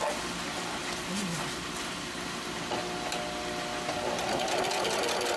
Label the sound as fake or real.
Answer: real